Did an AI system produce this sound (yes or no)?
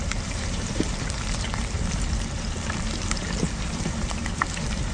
yes